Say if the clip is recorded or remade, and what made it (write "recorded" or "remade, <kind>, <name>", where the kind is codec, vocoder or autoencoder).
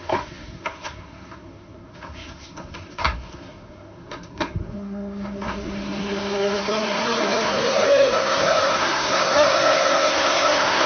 remade, codec, SNAC